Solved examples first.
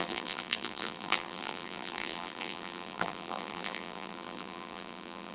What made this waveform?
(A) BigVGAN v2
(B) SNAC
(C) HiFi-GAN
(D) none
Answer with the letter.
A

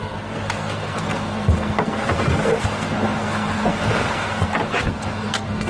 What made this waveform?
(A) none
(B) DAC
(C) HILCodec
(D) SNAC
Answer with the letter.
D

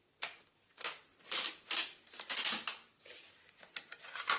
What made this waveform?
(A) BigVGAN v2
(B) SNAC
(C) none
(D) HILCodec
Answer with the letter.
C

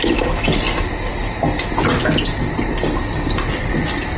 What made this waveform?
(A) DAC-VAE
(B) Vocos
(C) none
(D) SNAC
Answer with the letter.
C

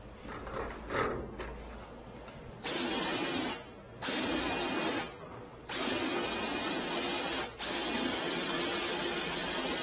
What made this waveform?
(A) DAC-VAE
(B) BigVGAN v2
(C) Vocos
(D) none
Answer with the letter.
D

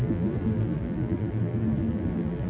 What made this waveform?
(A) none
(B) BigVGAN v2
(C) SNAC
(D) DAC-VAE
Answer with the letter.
B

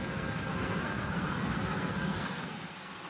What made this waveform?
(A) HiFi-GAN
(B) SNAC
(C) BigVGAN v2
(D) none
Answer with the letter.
B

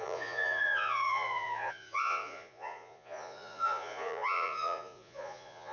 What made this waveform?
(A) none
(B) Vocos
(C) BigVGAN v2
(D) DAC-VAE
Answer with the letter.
B